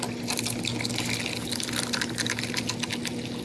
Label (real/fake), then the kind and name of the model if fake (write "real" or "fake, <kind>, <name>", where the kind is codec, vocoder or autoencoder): real